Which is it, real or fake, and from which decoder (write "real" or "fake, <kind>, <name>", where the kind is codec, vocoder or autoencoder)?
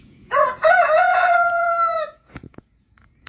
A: fake, vocoder, Vocos